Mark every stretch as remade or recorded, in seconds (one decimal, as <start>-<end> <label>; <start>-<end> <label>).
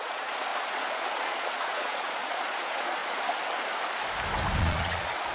0.0-3.0 remade; 3.0-4.6 recorded; 4.6-5.3 remade